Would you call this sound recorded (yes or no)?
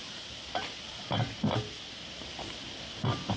yes